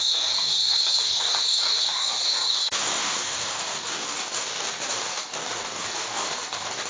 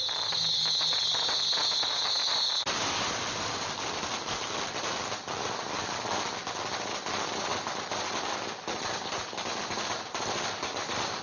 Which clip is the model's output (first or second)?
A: first